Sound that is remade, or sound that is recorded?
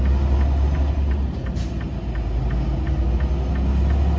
recorded